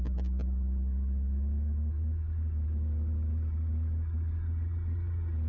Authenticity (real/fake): real